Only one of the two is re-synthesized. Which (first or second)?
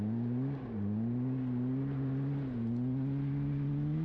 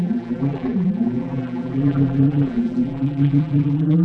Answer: second